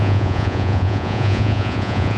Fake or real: fake